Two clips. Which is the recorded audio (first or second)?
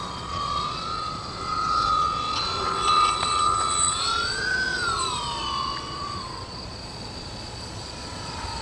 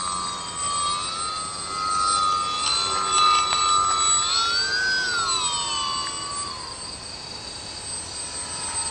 second